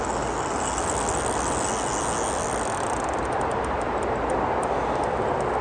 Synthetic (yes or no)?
no